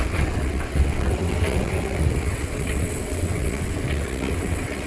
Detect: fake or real fake